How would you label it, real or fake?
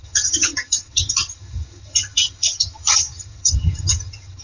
fake